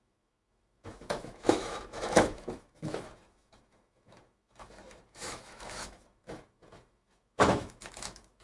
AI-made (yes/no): yes